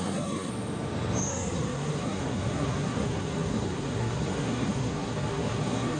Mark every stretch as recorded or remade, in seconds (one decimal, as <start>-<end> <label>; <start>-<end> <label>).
0.0-0.5 remade; 0.5-1.3 recorded; 1.3-6.0 remade